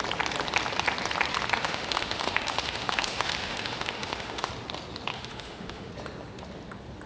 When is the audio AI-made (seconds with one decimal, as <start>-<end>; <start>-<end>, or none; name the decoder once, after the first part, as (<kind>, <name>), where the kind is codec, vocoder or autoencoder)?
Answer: 1.6-4.5 (autoencoder, DAC-VAE); 5.1-5.9